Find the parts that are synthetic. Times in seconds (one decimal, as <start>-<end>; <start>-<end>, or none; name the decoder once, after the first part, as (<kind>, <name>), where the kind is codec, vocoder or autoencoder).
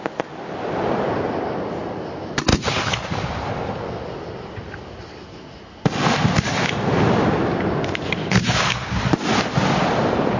8.2-9.0 (codec, DAC)